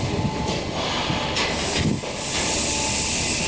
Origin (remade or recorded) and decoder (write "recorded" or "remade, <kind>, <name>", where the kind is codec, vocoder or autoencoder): recorded